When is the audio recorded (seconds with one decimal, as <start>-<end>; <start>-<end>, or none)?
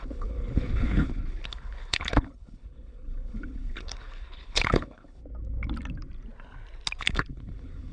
5.2-7.0